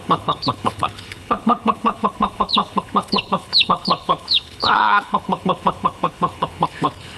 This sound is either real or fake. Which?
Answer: fake